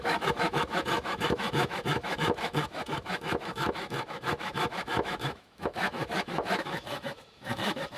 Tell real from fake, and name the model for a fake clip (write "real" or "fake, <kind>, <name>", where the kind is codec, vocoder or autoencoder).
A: fake, autoencoder, DAC-VAE